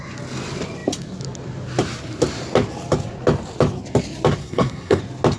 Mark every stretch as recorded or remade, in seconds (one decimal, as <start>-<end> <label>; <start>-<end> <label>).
0.0-4.4 recorded; 4.4-5.0 remade; 5.0-5.4 recorded